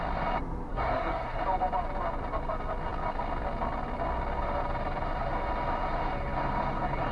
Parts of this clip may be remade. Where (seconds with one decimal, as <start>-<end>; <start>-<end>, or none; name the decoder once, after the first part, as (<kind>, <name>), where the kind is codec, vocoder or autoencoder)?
0.7-1.4 (codec, SNAC)